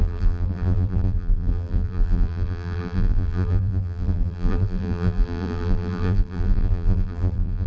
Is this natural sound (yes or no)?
no